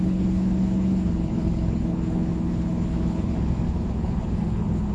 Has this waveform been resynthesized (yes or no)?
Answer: yes